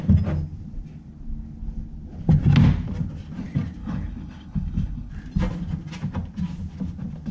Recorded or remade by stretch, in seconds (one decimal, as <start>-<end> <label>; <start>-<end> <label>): 0.0-3.8 recorded; 3.8-5.1 remade; 5.1-7.3 recorded